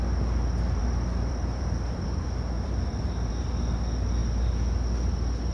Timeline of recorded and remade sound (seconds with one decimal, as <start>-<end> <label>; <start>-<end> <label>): 0.0-0.8 recorded; 0.8-3.3 remade; 3.3-5.5 recorded